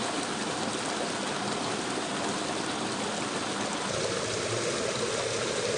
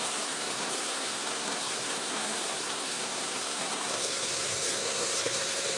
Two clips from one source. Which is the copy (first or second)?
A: second